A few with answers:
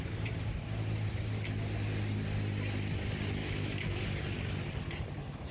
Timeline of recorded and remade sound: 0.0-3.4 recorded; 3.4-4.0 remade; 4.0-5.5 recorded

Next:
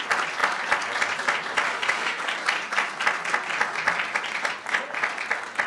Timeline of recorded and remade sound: 0.0-1.7 recorded; 1.7-2.2 remade; 2.2-5.7 recorded

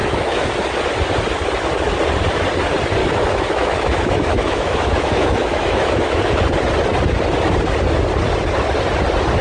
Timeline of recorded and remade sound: 0.0-0.5 remade; 0.5-3.0 recorded; 3.0-6.4 remade; 6.4-9.4 recorded